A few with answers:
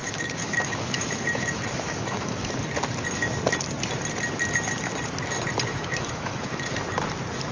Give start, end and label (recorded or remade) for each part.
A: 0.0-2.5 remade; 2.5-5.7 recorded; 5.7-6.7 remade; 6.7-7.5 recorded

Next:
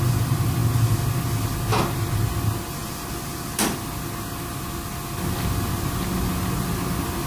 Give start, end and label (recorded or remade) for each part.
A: 0.0-7.3 recorded

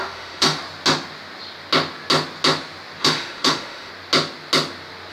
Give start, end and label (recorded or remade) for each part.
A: 0.0-0.6 remade; 0.6-3.0 recorded; 3.0-3.9 remade; 3.9-5.1 recorded

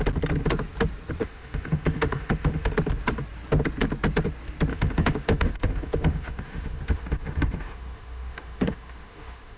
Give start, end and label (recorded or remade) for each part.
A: 0.0-1.2 recorded; 1.2-2.7 remade; 2.7-4.7 recorded; 4.7-9.6 remade

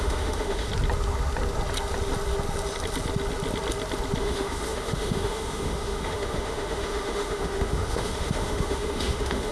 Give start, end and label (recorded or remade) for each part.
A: 0.0-0.7 remade; 0.7-4.2 recorded; 4.2-9.5 remade

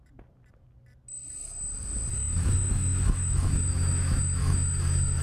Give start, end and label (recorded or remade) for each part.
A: 0.0-2.1 recorded; 2.1-5.2 remade

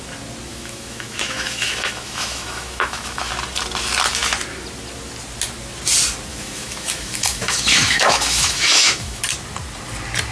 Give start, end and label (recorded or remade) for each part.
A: 0.0-0.5 recorded; 0.5-3.3 remade; 3.3-6.3 recorded; 6.3-9.2 remade; 9.2-10.3 recorded

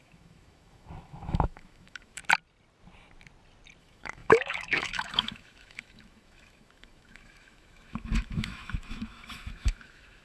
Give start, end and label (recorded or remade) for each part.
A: 0.0-2.2 remade; 2.2-3.8 recorded; 3.8-10.2 remade